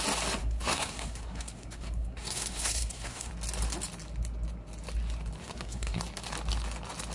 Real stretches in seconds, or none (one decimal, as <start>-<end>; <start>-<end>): 0.0-0.4; 3.3-5.4; 6.0-7.1